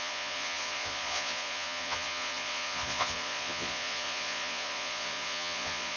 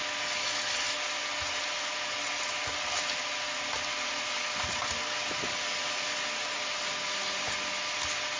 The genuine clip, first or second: second